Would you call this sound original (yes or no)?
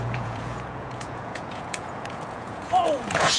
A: no